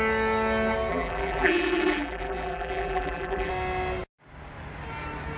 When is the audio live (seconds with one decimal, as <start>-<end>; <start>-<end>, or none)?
0.0-0.9; 3.5-5.4